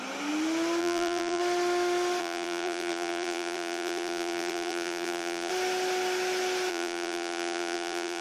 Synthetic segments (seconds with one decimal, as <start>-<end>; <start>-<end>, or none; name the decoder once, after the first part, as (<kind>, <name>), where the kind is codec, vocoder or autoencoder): 0.8-1.4 (vocoder, BigVGAN v2); 2.2-5.5; 6.7-8.2